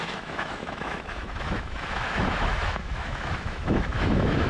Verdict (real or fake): fake